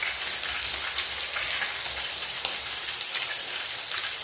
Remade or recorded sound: recorded